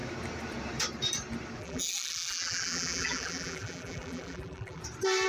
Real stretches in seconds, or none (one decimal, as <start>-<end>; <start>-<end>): 0.0-1.6; 4.8-5.3